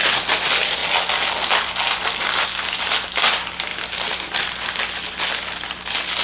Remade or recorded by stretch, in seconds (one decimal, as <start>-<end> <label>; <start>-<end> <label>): 0.0-6.2 recorded